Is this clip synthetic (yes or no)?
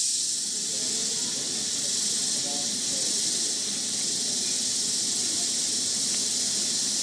no